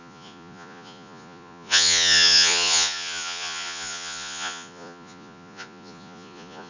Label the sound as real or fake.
fake